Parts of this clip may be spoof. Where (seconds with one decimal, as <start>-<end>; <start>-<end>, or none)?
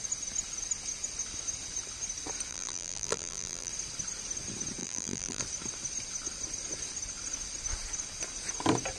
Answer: 2.5-3.7; 4.8-5.4